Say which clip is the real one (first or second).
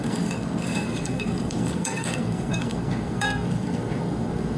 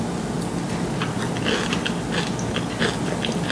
second